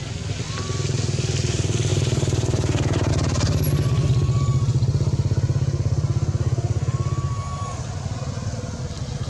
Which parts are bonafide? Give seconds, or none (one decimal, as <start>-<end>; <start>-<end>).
0.0-1.9; 3.1-9.3